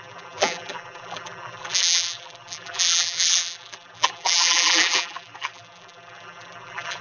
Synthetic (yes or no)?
yes